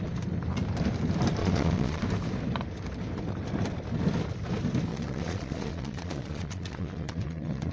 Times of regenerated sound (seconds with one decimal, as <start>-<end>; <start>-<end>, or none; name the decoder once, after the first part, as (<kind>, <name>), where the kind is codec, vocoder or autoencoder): 1.4-2.0 (vocoder, Vocos); 4.9-7.7